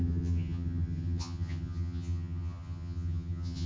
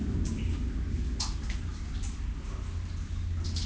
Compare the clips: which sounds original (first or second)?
second